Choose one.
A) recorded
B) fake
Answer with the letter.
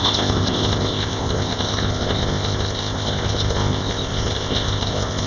B